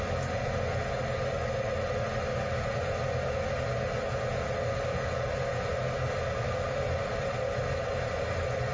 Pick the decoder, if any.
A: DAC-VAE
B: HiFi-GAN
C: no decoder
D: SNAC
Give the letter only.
C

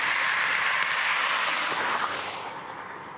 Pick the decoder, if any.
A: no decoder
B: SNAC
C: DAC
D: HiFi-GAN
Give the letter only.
A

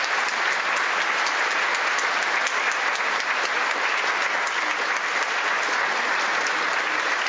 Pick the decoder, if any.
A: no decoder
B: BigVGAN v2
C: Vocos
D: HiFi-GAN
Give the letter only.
A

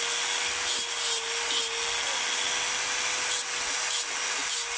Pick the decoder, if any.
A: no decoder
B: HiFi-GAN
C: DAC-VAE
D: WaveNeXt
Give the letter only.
A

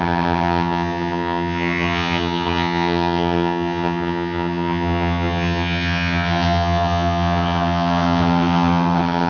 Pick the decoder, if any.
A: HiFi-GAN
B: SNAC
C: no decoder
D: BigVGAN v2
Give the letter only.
A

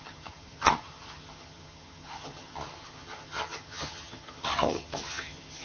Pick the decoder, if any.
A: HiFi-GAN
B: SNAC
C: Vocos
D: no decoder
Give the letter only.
A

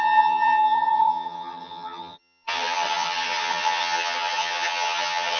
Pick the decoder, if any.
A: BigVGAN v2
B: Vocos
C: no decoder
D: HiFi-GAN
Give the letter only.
D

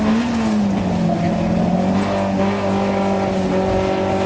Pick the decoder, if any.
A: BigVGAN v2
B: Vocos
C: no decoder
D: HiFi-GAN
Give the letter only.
C